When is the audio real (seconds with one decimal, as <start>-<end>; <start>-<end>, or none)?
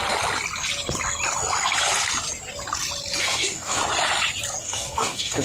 0.0-3.2; 3.8-4.6